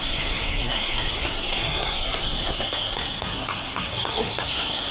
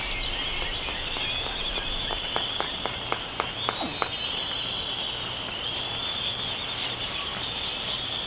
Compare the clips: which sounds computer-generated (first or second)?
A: first